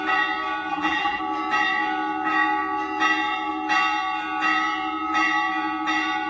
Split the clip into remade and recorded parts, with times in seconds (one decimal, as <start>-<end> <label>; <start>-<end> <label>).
0.0-0.7 recorded; 0.7-1.2 remade; 1.2-6.3 recorded